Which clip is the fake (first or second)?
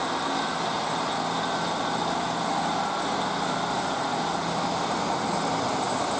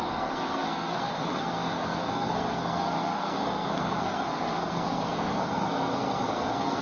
second